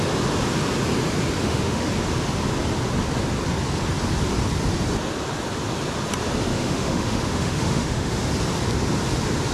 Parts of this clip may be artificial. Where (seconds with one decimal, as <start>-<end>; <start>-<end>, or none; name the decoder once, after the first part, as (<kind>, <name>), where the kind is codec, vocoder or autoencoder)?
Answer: 1.4-1.9 (autoencoder, DAC-VAE); 6.5-8.3